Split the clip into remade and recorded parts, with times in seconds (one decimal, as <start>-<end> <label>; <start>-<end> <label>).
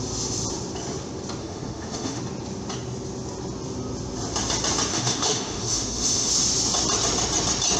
0.0-1.4 recorded; 1.4-2.2 remade; 2.2-4.9 recorded; 4.9-6.3 remade; 6.3-7.8 recorded